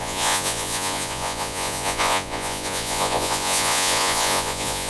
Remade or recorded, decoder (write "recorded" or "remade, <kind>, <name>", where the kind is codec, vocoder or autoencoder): remade, vocoder, Vocos